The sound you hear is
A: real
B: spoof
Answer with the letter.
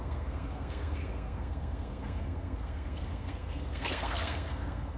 B